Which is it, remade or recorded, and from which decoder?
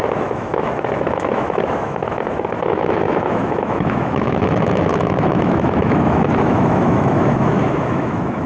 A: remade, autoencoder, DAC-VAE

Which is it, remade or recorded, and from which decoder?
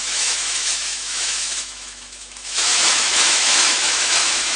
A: remade, autoencoder, DAC-VAE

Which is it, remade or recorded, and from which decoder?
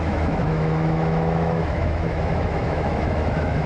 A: remade, autoencoder, DAC-VAE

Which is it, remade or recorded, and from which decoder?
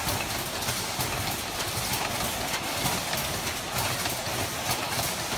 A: recorded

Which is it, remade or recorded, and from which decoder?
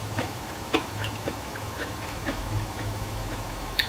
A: remade, autoencoder, DAC-VAE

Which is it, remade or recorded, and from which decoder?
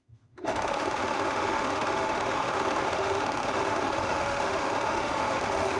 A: remade, autoencoder, DAC-VAE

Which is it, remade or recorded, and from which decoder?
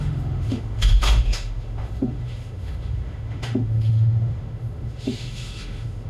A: remade, autoencoder, DAC-VAE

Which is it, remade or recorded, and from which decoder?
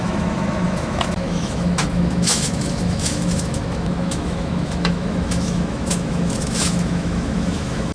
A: remade, autoencoder, DAC-VAE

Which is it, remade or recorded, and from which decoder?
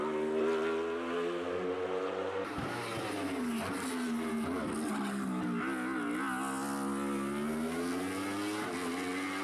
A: recorded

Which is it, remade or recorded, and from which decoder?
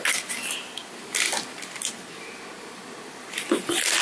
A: recorded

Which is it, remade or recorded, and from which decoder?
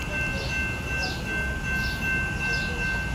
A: recorded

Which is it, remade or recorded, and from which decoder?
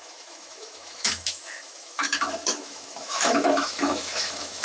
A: remade, autoencoder, DAC-VAE